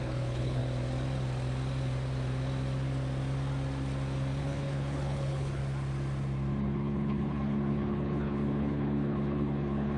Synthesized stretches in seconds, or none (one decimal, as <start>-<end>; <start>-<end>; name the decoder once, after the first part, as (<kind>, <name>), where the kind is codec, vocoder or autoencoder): 0.0-0.6 (codec, HILCodec); 4.4-5.6; 6.6-10.0